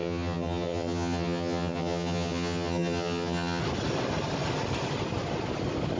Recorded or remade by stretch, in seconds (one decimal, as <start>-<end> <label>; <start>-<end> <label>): 0.0-3.6 remade; 3.6-6.0 recorded

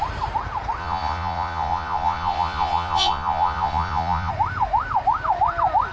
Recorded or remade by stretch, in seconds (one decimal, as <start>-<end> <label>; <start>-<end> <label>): 0.0-0.8 recorded; 0.8-4.3 remade; 4.3-5.9 recorded

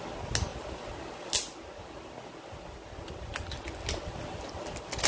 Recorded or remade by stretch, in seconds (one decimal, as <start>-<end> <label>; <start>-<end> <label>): 0.0-5.1 recorded

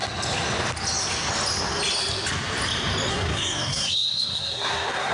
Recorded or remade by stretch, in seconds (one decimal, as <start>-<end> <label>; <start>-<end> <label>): 0.0-3.1 recorded; 3.1-5.1 remade

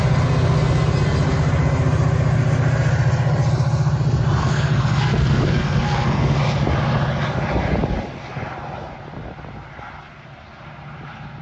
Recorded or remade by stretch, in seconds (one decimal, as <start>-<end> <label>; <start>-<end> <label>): 0.0-4.4 recorded; 4.4-6.4 remade; 6.4-11.4 recorded

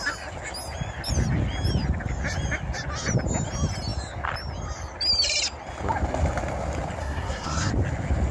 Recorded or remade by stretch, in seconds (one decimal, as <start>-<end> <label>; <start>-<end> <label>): 0.0-7.0 recorded; 7.0-7.7 remade; 7.7-8.3 recorded